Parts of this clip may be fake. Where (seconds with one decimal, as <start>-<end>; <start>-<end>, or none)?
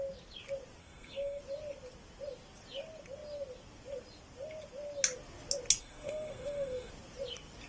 0.8-1.4; 5.8-6.9